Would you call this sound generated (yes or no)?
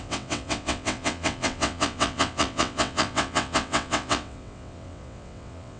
yes